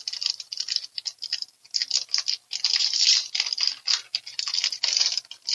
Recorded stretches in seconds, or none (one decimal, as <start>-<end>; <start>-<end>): 0.0-5.5